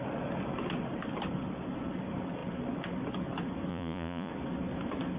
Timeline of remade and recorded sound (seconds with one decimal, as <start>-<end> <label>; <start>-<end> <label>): 0.0-3.7 recorded; 3.7-4.3 remade; 4.3-5.2 recorded